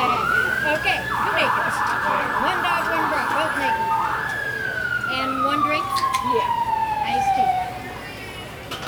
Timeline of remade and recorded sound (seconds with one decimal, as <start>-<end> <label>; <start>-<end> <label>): 0.0-6.8 recorded; 6.8-7.7 remade; 7.7-8.9 recorded